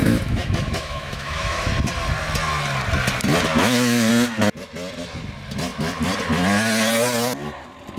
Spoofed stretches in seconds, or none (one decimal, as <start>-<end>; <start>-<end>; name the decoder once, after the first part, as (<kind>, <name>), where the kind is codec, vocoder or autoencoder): 0.0-1.7 (autoencoder, DAC-VAE); 3.6-4.1